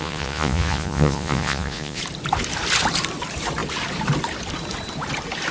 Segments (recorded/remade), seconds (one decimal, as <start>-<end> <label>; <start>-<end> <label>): 0.0-2.0 remade; 2.0-5.5 recorded

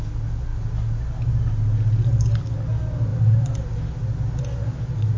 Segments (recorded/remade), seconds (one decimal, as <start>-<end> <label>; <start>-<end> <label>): 0.0-5.2 recorded

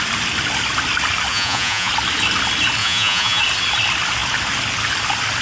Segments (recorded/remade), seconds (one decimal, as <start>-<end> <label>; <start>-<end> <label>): 0.0-1.3 recorded; 1.3-1.9 remade; 1.9-2.8 recorded; 2.8-3.4 remade; 3.4-5.4 recorded

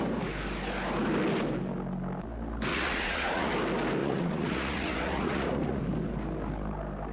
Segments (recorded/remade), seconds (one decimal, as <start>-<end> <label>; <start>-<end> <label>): 0.0-2.7 recorded; 2.7-3.5 remade; 3.5-4.0 recorded; 4.0-5.8 remade; 5.8-7.1 recorded

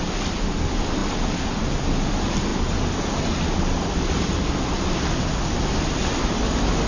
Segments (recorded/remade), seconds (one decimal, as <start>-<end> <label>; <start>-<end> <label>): 0.0-6.9 recorded